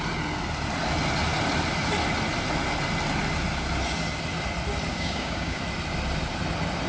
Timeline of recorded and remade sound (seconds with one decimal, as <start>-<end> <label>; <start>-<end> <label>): 0.0-4.9 recorded; 4.9-5.6 remade; 5.6-6.9 recorded